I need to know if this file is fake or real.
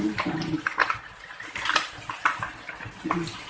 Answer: real